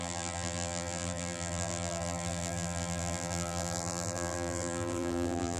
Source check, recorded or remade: remade